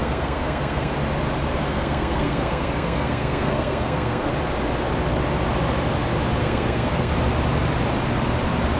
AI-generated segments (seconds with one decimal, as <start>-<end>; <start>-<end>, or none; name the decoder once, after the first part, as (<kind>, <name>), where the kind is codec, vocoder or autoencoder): 0.0-0.9 (codec, SNAC); 1.5-4.3; 6.4-7.1